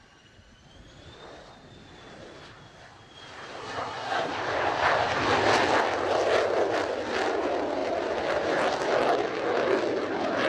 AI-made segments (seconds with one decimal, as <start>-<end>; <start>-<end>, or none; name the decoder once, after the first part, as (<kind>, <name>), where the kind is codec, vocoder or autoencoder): 3.6-4.3 (codec, SNAC)